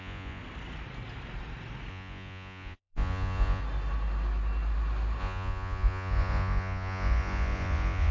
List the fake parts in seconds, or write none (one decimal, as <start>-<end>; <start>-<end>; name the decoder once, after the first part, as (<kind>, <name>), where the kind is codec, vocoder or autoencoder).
0.0-0.4 (vocoder, Vocos); 1.9-3.6; 5.2-8.1